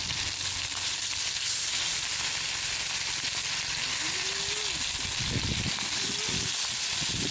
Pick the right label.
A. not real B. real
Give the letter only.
B